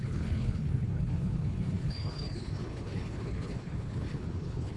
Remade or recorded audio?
remade